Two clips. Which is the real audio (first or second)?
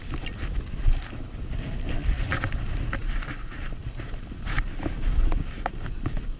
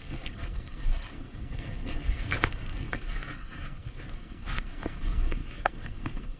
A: first